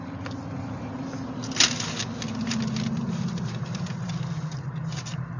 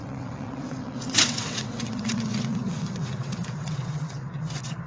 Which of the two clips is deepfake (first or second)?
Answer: second